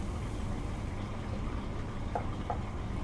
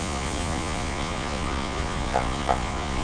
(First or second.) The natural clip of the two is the first